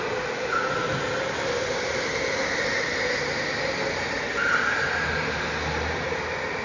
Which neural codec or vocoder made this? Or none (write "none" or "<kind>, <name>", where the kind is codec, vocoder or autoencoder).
none